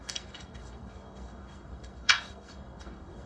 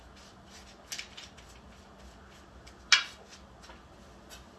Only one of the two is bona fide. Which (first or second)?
second